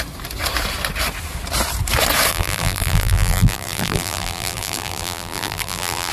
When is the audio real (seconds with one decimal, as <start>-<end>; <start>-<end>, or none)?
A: 0.0-2.3